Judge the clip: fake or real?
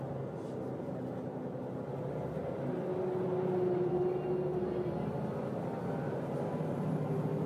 real